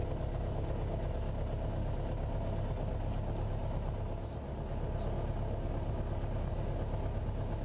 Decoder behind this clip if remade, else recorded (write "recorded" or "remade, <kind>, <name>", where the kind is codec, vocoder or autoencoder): recorded